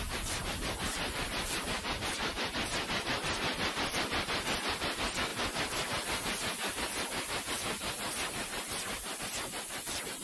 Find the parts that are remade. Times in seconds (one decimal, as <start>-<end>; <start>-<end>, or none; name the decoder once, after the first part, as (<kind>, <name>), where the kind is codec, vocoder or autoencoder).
0.0-5.3 (vocoder, BigVGAN v2); 9.2-10.2